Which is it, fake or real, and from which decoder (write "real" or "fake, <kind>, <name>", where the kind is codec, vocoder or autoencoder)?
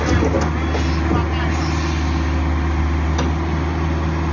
real